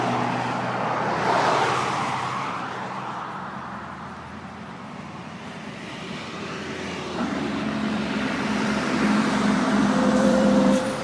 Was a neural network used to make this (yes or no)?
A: yes